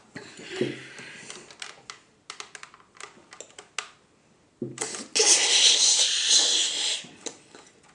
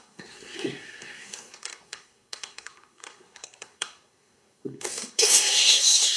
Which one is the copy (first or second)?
second